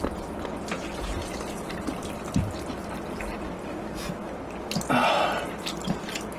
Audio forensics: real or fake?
real